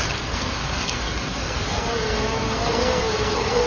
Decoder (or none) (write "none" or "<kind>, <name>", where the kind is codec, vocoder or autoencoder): codec, SNAC